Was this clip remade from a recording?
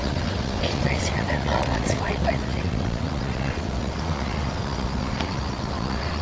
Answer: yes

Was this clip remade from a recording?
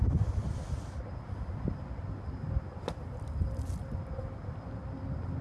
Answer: no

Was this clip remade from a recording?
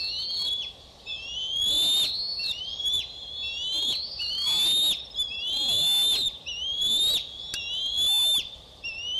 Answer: no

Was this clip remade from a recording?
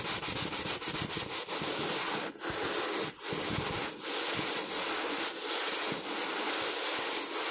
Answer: no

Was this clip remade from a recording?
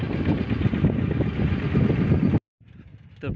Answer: yes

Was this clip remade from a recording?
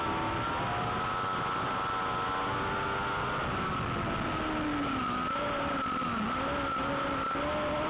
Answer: no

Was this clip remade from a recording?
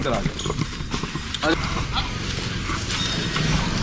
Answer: no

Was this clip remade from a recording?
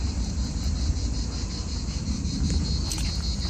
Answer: no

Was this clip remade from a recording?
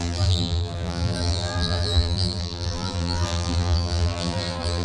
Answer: yes